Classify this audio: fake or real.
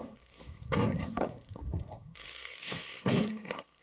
fake